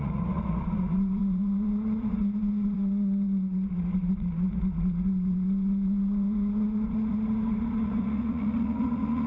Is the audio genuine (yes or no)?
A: no